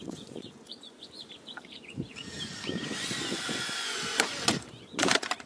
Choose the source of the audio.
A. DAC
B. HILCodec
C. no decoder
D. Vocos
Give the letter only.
D